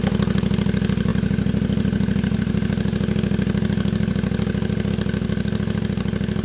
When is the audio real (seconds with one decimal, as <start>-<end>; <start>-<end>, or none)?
0.0-6.4